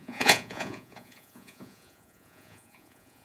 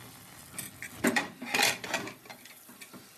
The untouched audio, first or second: second